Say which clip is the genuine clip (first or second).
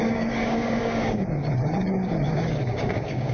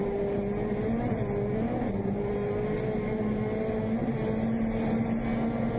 second